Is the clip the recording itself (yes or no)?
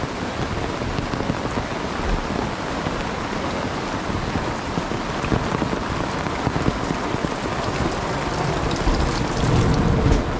yes